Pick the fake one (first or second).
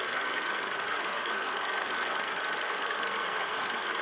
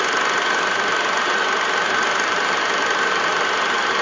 first